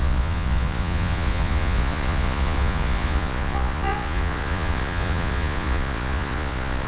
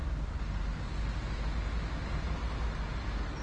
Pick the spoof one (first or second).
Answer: first